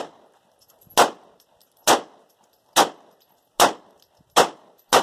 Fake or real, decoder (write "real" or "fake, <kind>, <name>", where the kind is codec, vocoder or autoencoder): real